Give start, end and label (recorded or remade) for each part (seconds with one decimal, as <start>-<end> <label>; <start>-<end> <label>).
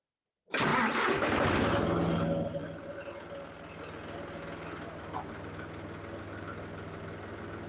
0.0-7.7 recorded